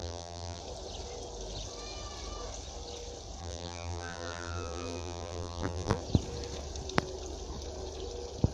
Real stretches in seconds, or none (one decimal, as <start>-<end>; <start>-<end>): 0.6-3.4; 6.0-8.5